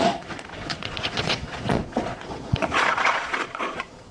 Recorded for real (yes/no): no